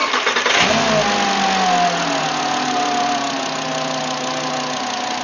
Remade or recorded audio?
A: recorded